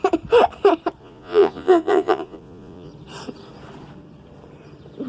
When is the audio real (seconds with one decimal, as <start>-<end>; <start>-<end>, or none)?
0.0-1.0; 2.9-5.1